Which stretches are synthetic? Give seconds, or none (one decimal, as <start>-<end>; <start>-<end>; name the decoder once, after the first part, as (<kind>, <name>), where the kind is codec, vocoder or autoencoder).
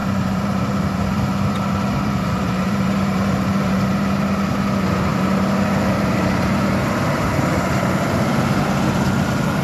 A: 0.0-4.5 (vocoder, BigVGAN v2); 5.1-9.1